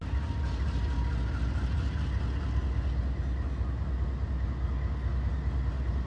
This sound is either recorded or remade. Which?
recorded